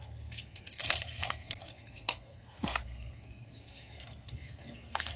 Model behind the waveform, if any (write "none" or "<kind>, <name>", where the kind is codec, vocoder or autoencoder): codec, SNAC